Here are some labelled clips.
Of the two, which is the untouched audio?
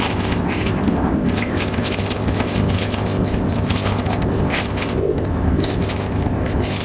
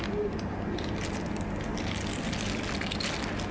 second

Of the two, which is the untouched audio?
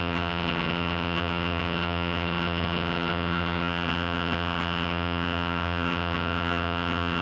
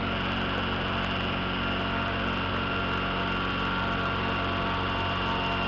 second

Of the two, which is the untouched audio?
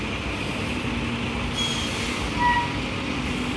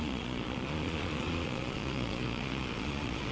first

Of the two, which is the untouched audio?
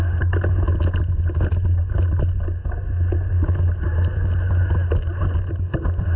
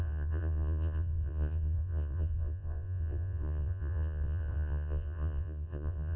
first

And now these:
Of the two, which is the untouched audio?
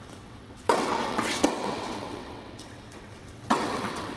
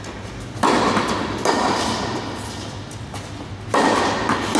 second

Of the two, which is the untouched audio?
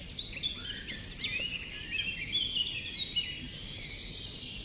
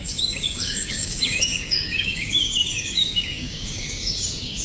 first